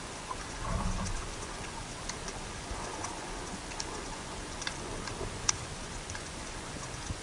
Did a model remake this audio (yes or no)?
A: yes